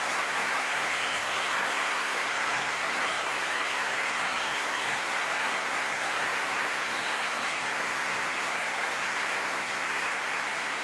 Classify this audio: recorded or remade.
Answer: remade